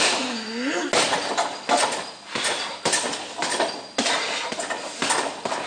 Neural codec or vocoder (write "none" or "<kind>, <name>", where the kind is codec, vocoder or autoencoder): none